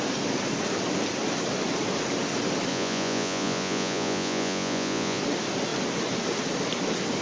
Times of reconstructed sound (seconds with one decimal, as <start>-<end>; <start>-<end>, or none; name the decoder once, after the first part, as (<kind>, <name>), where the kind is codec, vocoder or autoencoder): 2.7-5.2 (vocoder, Vocos)